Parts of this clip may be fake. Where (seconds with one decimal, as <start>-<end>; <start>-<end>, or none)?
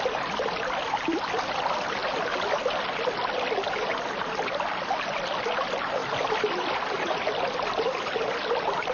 none